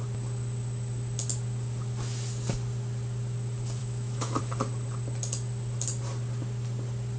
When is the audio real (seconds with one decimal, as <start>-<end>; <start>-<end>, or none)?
0.0-3.8; 4.4-7.2